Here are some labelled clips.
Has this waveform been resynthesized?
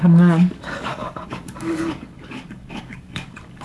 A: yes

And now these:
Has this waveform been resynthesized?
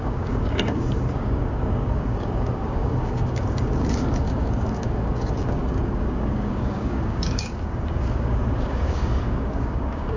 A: yes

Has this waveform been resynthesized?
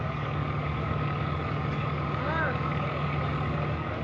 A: yes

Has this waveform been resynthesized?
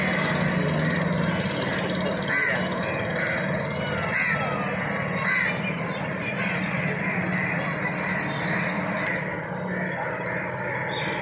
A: no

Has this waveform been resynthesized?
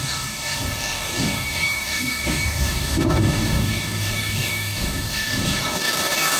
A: yes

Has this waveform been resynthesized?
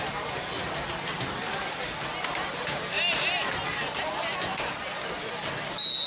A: no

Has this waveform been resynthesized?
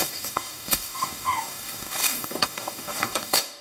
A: yes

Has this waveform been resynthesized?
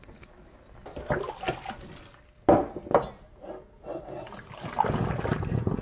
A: no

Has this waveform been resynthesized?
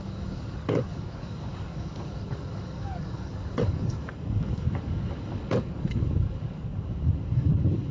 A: yes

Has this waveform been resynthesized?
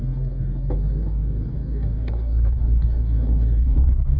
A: yes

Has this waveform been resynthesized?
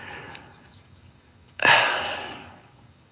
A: yes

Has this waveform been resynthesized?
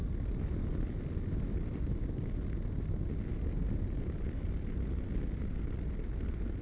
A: no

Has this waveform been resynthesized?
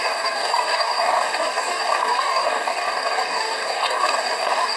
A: yes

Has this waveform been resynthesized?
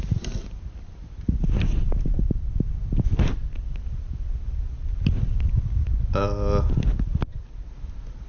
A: no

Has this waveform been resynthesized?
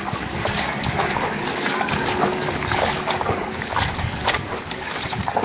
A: yes